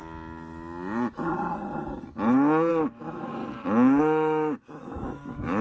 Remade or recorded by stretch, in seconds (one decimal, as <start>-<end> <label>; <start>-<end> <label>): 0.0-2.7 recorded; 2.7-3.4 remade; 3.4-4.0 recorded; 4.0-5.6 remade